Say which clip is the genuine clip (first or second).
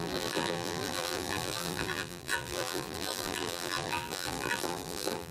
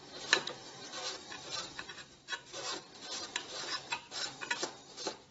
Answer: second